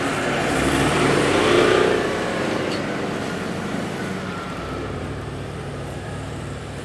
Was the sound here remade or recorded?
remade